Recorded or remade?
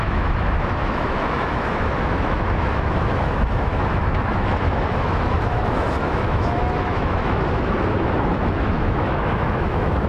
remade